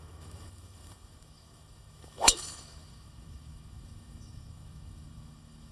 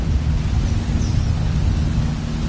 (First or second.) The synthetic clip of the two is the first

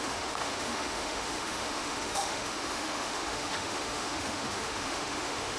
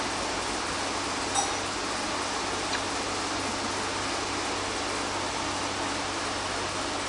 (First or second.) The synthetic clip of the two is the first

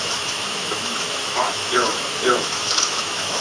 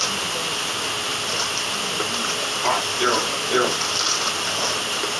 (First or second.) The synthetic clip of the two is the first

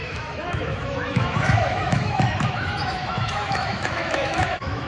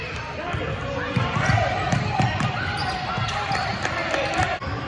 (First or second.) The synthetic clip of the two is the first